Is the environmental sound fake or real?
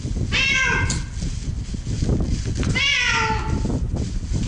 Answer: real